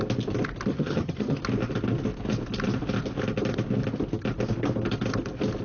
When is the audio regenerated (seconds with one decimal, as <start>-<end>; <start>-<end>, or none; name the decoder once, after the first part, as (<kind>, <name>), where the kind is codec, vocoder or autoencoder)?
0.7-1.4 (vocoder, HiFi-GAN)